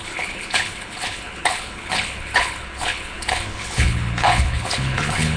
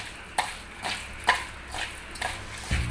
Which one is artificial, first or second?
first